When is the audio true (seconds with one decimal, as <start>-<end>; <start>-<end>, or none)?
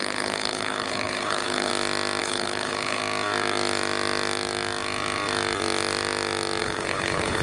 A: 1.7-2.2; 3.0-6.6